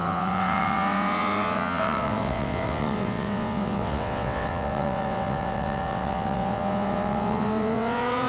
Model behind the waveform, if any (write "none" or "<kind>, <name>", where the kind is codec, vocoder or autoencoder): vocoder, WaveNeXt